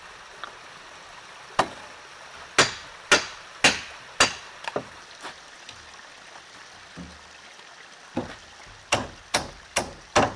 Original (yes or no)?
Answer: yes